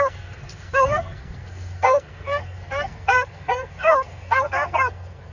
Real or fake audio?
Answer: fake